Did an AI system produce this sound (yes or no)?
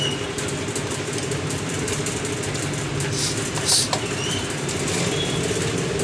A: no